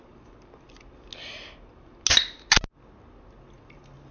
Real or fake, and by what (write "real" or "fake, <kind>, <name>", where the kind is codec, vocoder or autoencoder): real